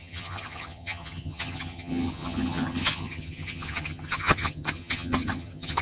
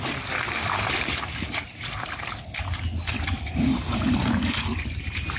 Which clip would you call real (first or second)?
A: second